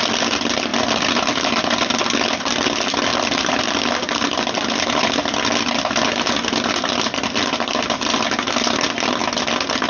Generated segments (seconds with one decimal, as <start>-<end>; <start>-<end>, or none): 3.1-5.0